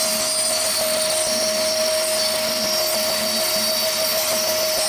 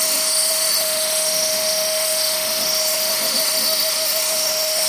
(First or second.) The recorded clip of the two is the first